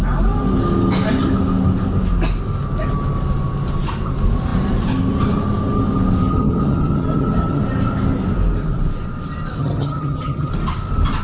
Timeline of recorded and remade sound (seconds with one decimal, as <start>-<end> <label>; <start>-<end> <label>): 0.0-6.3 recorded; 6.3-7.6 remade; 7.6-9.6 recorded; 9.6-10.5 remade; 10.5-11.2 recorded